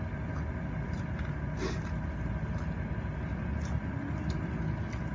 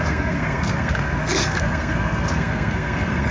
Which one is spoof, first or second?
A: second